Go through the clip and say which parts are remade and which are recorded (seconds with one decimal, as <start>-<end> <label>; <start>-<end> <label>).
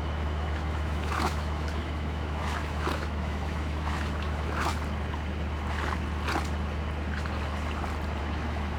0.0-4.7 remade; 4.7-8.2 recorded; 8.2-8.8 remade